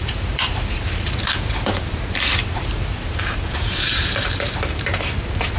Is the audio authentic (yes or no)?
no